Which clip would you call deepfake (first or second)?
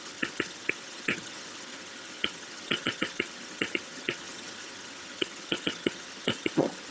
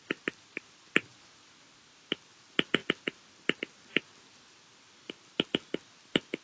first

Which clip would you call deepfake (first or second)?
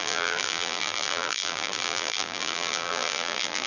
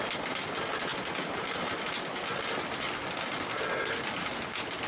first